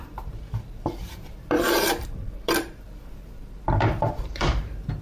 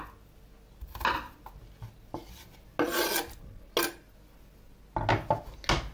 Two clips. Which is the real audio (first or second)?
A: second